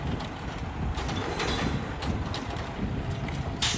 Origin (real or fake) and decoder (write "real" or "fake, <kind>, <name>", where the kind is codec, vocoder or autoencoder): real